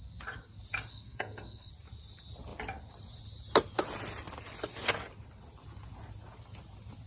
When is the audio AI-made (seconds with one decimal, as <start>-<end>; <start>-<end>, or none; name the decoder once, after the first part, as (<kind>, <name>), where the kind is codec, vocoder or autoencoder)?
0.9-1.7 (codec, SNAC)